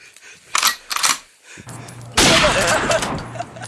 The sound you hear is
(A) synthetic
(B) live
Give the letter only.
B